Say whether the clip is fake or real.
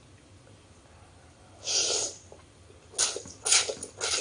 real